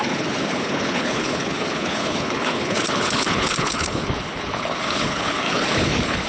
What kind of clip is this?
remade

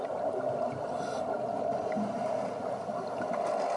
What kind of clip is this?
recorded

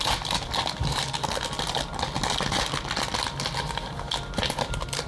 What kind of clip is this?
recorded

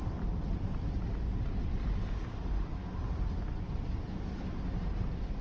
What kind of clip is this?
recorded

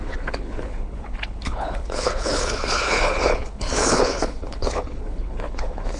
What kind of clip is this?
remade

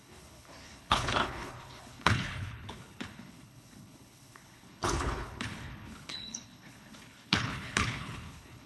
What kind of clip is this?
remade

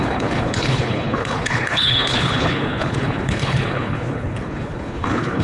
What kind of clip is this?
remade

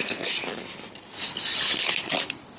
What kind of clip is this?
recorded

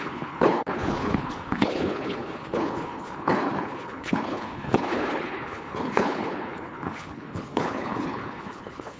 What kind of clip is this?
remade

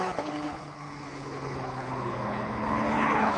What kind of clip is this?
remade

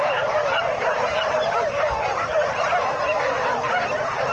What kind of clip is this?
recorded